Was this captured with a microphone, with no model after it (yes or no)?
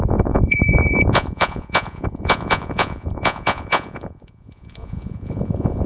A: no